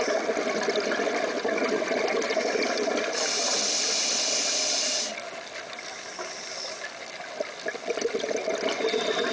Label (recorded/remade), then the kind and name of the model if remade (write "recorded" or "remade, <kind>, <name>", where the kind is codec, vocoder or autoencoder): recorded